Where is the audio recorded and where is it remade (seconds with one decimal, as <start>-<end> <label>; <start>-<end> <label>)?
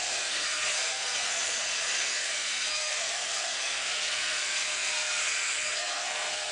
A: 0.0-6.5 remade